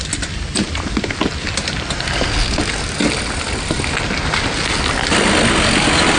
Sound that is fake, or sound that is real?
real